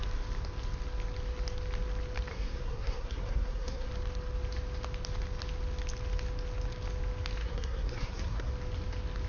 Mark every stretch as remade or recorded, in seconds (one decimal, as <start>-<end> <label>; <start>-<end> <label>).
0.0-2.3 recorded; 2.3-3.9 remade; 3.9-7.4 recorded; 7.4-8.5 remade; 8.5-9.3 recorded